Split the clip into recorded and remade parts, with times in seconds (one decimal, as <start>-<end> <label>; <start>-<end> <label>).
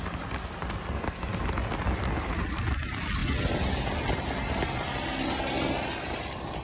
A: 0.0-6.6 recorded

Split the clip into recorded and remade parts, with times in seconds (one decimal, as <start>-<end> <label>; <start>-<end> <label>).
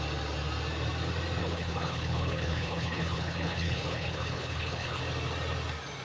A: 0.0-1.4 recorded; 1.4-5.0 remade; 5.0-6.0 recorded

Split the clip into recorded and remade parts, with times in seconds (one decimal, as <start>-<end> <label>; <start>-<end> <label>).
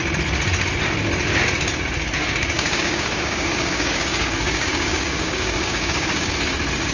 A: 0.0-2.2 recorded; 2.2-6.3 remade; 6.3-6.9 recorded